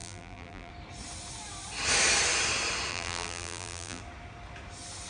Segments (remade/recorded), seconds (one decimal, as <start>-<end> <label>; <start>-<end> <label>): 0.0-0.7 remade; 0.7-2.9 recorded; 2.9-4.0 remade; 4.0-5.1 recorded